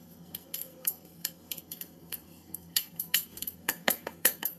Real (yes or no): no